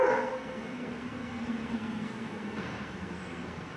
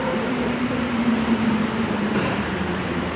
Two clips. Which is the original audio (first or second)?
second